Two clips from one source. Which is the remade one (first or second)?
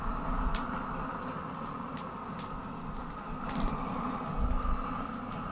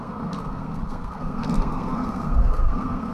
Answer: second